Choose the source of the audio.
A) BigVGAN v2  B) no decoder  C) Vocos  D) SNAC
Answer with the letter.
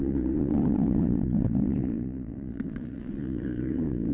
C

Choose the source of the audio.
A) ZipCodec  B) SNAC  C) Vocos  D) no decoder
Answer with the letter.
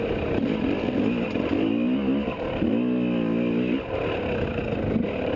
D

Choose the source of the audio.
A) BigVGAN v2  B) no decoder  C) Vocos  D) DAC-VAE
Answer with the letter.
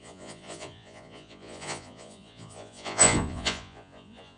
C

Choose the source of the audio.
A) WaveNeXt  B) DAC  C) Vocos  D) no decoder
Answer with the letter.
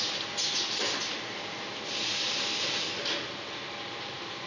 D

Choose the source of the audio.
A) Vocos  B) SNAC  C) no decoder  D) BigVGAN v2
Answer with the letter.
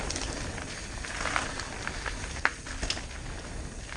C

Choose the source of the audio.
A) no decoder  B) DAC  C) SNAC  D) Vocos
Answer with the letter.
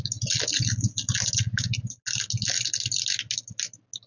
A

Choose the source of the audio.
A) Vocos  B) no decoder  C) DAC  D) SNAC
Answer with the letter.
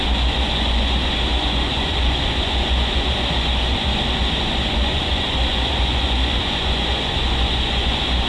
A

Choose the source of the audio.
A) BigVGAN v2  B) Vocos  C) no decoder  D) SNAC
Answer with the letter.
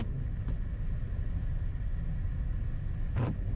C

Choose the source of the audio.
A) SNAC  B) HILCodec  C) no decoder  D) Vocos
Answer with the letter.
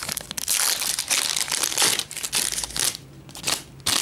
C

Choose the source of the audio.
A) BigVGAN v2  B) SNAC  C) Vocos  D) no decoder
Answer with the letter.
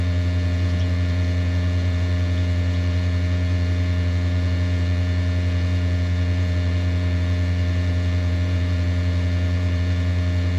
C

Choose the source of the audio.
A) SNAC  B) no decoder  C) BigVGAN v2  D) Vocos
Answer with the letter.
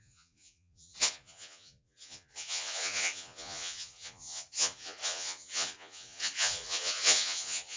D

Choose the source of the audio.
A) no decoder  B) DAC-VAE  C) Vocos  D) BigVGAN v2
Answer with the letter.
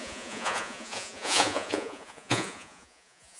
C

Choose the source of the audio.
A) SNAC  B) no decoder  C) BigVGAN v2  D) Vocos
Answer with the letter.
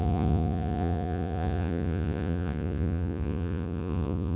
D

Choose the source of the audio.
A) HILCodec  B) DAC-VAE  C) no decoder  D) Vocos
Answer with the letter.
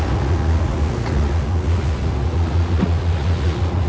D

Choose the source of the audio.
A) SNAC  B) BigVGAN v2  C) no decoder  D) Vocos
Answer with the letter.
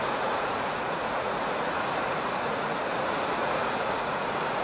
D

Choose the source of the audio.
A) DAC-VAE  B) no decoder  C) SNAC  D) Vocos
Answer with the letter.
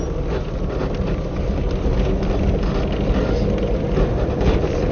B